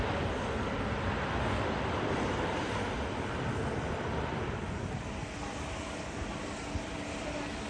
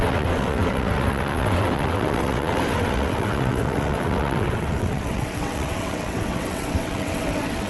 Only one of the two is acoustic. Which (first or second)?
first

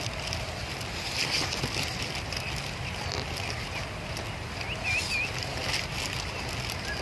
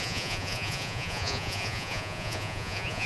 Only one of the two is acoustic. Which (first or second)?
first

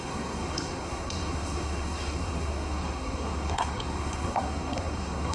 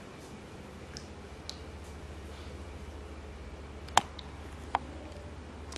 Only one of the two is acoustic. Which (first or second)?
second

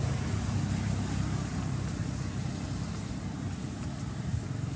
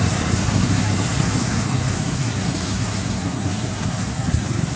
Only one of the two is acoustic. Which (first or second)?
first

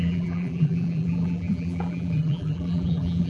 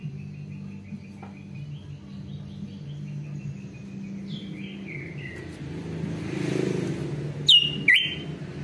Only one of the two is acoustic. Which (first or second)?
second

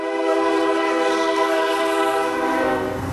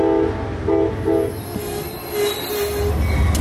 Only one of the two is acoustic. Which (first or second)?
second